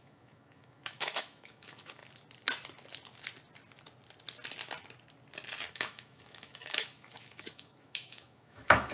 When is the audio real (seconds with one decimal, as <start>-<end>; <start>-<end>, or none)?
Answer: 2.0-5.7